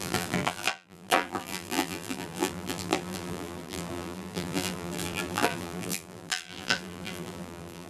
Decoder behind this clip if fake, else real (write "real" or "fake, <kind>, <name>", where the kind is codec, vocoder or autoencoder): fake, vocoder, BigVGAN v2